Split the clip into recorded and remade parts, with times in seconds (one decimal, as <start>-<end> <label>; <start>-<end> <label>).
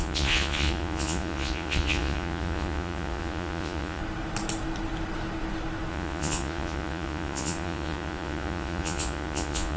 0.0-4.0 remade; 4.0-5.9 recorded; 5.9-9.8 remade